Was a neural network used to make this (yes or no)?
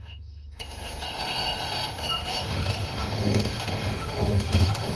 yes